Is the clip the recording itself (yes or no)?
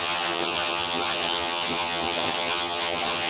no